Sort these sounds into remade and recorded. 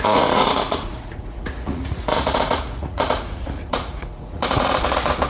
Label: remade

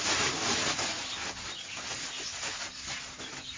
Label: recorded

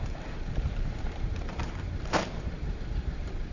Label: remade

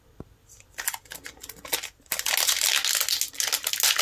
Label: recorded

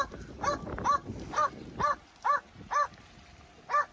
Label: recorded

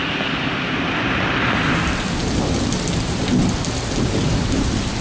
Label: recorded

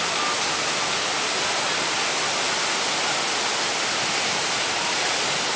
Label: recorded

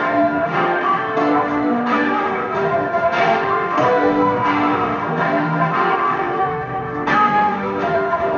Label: remade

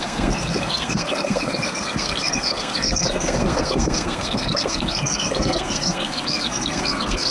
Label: remade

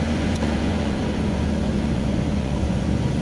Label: remade